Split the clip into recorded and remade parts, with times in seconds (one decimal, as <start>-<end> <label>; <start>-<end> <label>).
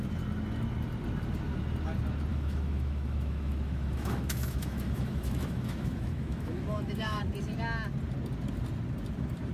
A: 0.0-2.3 recorded; 2.3-7.2 remade; 7.2-9.5 recorded